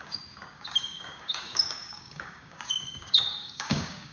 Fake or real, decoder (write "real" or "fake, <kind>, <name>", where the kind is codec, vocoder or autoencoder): fake, codec, DAC